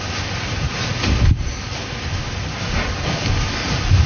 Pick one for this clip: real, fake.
real